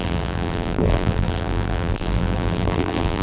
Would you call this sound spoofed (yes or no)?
yes